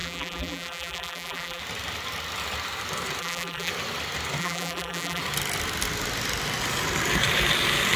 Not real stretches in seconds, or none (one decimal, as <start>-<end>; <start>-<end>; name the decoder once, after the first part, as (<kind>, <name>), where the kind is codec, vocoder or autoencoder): 0.0-1.6 (vocoder, BigVGAN v2); 3.2-3.7; 4.4-5.2